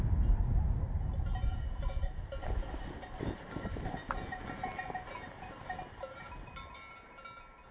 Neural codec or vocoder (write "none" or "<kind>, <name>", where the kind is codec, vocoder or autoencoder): none